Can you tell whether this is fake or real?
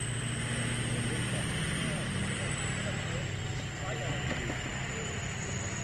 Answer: real